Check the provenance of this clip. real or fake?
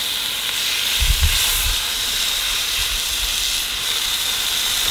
real